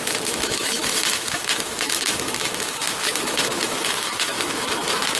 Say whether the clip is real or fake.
fake